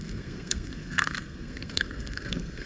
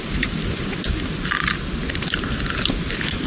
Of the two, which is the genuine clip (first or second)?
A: second